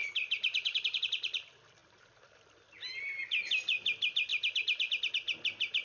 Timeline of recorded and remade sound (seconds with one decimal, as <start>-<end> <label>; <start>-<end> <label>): 0.0-1.0 remade; 1.0-4.3 recorded; 4.3-5.1 remade; 5.1-5.8 recorded